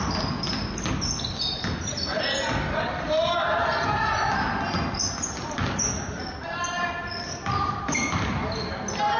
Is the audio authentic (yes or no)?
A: yes